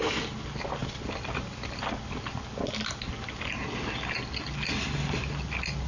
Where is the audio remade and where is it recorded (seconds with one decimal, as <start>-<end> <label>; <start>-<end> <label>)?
0.0-5.9 recorded